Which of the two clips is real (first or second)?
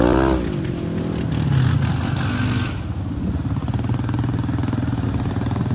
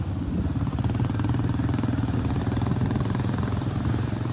first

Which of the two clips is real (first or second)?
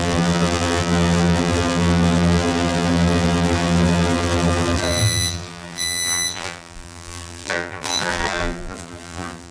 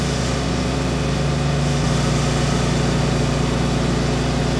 second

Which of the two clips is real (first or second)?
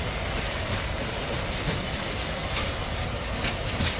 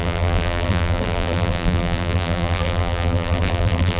first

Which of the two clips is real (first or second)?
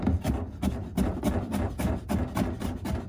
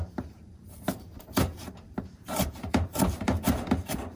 first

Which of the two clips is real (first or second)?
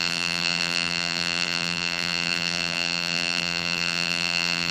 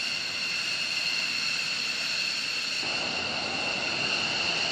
second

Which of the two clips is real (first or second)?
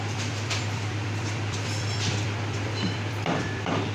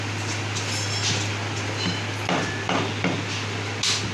second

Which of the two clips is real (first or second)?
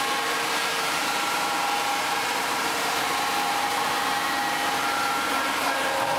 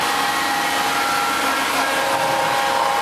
second